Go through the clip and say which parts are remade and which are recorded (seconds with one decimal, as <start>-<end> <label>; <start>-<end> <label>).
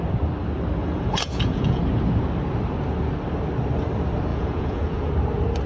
0.0-0.8 recorded; 0.8-1.8 remade; 1.8-4.3 recorded; 4.3-5.1 remade; 5.1-5.7 recorded